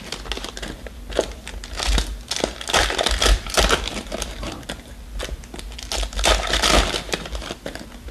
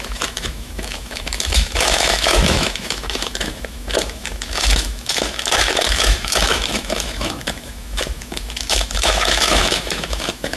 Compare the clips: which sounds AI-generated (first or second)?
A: second